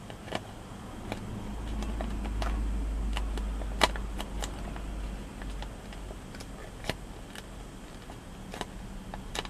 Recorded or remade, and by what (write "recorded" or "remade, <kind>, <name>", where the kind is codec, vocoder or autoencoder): recorded